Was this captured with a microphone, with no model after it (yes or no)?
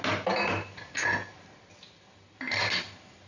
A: yes